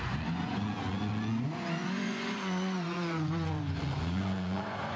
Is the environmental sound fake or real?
fake